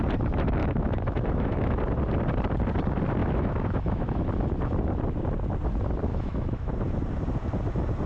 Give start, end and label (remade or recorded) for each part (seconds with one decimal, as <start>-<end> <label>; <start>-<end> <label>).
0.0-0.6 recorded; 0.6-1.8 remade; 1.8-3.2 recorded; 3.2-4.2 remade; 4.2-6.1 recorded; 6.1-6.7 remade; 6.7-8.1 recorded